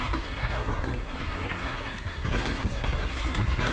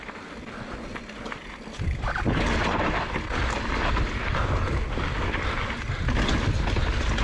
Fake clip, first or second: first